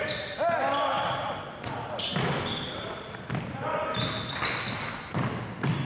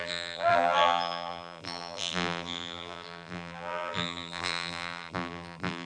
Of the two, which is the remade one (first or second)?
second